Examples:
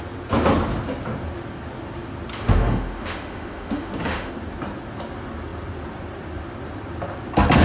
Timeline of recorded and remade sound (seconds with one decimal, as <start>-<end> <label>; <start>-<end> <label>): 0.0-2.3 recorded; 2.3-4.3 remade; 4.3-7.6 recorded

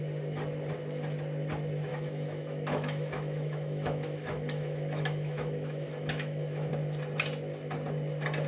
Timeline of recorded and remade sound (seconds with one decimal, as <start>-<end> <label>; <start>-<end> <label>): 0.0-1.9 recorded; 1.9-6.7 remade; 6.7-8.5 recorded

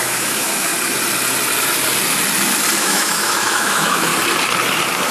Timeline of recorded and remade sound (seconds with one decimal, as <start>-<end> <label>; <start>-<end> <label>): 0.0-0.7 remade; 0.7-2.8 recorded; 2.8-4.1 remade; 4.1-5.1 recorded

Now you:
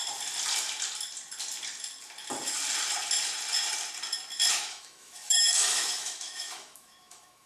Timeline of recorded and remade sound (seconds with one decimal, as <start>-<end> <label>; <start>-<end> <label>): 0.0-4.5 recorded; 4.5-7.5 remade

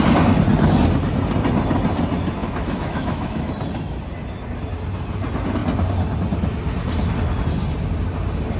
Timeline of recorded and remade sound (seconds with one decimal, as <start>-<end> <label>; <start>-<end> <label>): 0.0-2.4 recorded; 2.4-3.5 remade; 3.5-8.6 recorded